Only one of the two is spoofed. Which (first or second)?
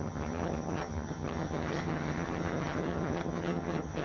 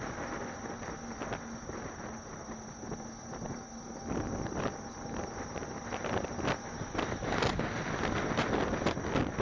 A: first